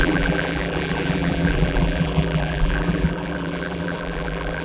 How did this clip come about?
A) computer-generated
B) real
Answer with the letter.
A